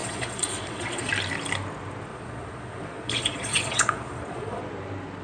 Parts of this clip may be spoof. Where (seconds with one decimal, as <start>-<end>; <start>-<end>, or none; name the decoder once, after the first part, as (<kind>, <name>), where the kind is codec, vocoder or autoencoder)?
0.0-1.1 (vocoder, Vocos); 2.1-4.6